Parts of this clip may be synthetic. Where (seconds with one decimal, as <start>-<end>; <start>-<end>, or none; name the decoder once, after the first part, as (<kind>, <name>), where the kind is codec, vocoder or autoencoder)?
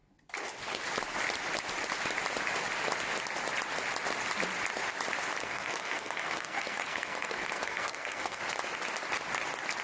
5.4-8.4 (codec, SNAC)